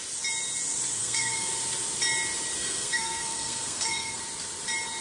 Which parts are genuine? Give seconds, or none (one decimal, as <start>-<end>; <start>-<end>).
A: 0.0-1.0; 1.5-2.6; 4.2-5.0